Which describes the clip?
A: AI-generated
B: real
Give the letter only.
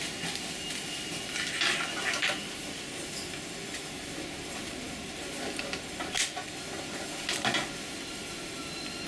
B